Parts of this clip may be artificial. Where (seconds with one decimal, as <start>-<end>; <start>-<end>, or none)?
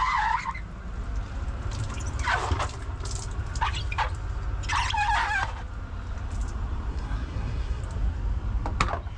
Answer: 6.9-7.8